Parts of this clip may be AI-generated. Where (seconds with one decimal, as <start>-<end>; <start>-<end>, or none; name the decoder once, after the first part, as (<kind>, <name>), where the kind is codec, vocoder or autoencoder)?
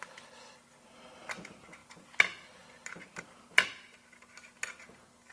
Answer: none